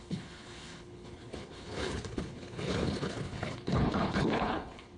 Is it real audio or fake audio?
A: fake